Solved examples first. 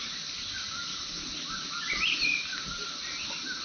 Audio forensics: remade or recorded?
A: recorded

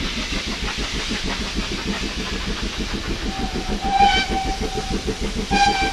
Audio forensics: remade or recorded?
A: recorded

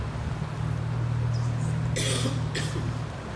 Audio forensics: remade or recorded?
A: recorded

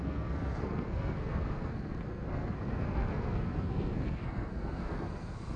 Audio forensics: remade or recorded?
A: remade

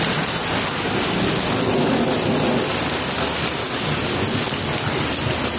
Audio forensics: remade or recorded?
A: recorded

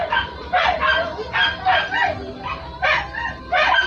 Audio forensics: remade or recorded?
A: recorded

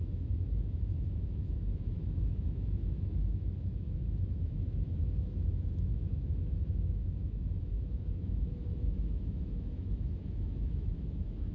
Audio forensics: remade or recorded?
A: remade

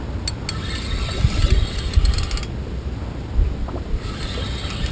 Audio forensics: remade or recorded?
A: recorded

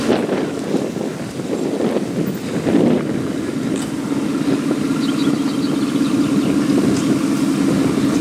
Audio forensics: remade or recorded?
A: recorded